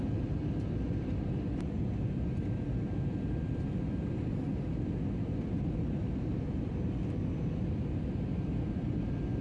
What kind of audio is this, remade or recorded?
recorded